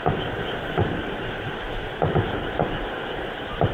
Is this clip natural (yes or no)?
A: yes